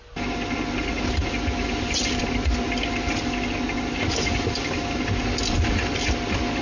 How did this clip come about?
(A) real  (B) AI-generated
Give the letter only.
A